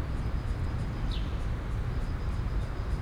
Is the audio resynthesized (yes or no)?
no